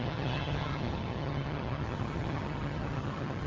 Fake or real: fake